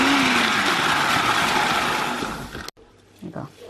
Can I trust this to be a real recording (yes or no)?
yes